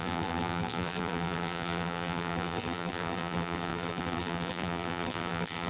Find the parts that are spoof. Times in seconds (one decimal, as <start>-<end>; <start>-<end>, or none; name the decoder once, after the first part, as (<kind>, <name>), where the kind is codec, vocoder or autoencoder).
0.0-5.7 (vocoder, BigVGAN v2)